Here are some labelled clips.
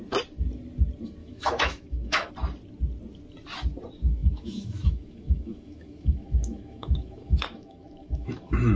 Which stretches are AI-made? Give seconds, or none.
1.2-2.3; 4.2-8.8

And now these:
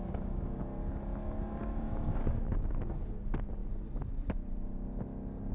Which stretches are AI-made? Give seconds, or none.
0.0-0.6; 1.6-2.4

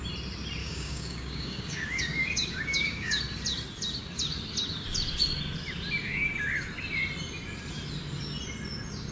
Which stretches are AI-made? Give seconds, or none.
0.6-3.2

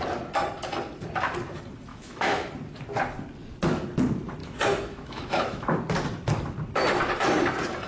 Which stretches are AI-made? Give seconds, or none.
1.9-2.5; 4.4-5.8